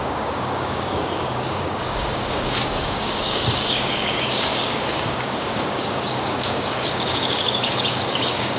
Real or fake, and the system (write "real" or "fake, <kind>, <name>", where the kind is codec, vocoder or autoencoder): fake, codec, DAC